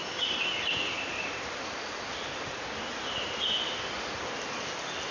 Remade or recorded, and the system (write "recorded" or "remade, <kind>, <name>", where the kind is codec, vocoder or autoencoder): remade, vocoder, BigVGAN v2